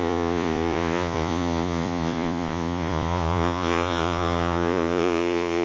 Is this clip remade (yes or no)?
yes